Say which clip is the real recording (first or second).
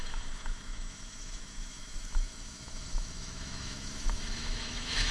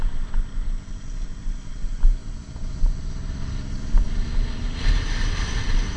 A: second